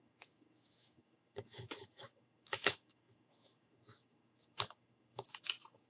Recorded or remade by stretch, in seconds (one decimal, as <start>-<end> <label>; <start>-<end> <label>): 0.0-5.9 remade